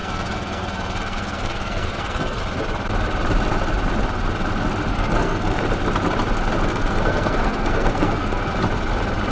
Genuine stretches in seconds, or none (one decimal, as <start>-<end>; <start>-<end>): 2.4-4.9; 5.6-6.7; 8.5-9.3

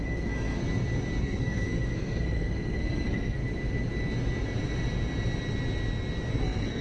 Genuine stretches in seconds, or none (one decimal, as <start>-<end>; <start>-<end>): 0.6-1.2; 3.4-6.3

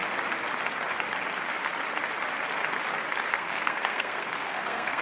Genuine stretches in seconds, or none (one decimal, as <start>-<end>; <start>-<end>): 0.0-3.3